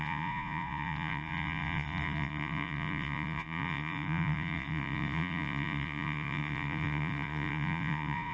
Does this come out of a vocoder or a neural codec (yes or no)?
yes